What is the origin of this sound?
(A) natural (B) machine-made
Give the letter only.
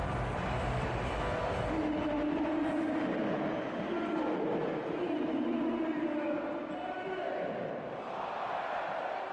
A